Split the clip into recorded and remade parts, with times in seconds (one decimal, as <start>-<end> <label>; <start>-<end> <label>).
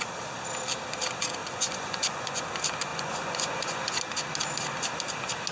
0.0-1.4 recorded; 1.4-2.4 remade; 2.4-2.9 recorded; 2.9-4.0 remade; 4.0-5.5 recorded